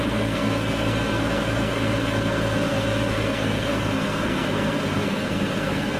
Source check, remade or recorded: remade